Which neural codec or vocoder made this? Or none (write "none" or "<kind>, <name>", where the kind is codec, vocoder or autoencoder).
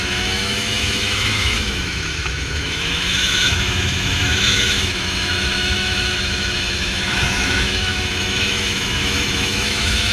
autoencoder, DAC-VAE